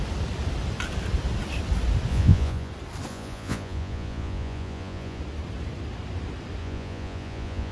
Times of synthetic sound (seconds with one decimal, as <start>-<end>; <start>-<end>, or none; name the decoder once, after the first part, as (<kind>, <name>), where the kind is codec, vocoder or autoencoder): 2.1-2.7 (vocoder, Vocos); 3.1-5.2; 6.6-7.7